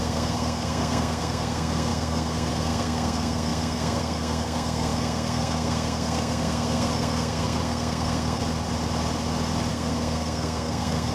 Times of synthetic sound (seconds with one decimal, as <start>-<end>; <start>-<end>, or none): 0.0-8.4; 9.7-11.1